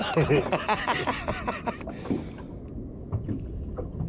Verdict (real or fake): real